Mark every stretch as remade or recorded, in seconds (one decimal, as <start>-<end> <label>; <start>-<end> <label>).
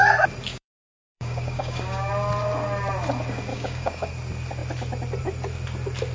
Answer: 0.0-0.5 recorded; 0.5-2.1 remade; 2.1-3.5 recorded; 3.5-4.1 remade; 4.1-6.1 recorded